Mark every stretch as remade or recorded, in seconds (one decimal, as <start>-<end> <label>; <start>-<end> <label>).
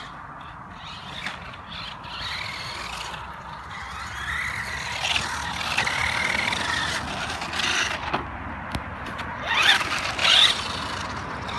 0.0-11.6 recorded